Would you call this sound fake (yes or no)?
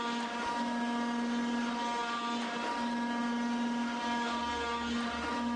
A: no